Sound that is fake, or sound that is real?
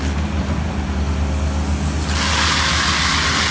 real